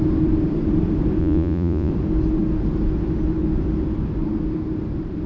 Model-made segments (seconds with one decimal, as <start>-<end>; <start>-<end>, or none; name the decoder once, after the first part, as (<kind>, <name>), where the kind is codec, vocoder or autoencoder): 1.2-1.9 (vocoder, Vocos)